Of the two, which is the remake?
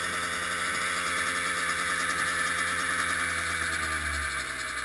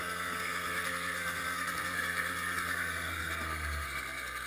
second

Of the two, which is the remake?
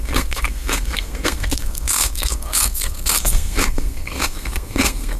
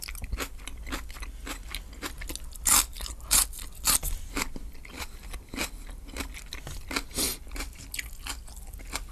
first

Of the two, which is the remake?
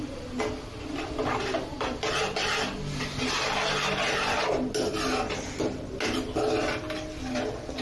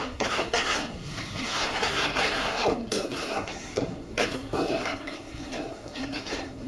second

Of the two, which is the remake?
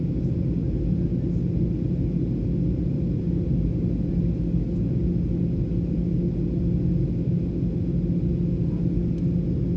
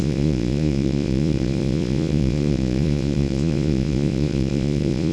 second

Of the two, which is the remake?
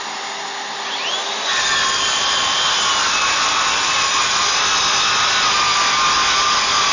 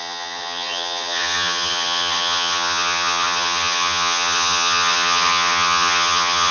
second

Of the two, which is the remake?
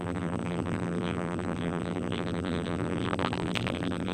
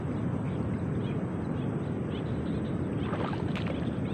first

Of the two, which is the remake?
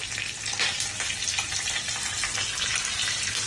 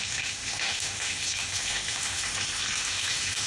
second